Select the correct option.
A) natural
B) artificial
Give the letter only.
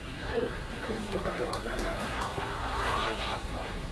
B